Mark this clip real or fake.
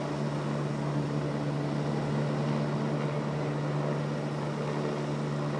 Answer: real